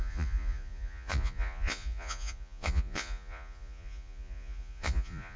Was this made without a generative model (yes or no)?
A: no